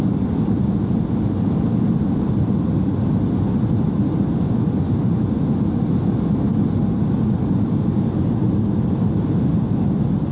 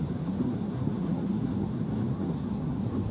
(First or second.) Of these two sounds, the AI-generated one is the second